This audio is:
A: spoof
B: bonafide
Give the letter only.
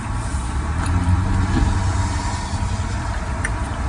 B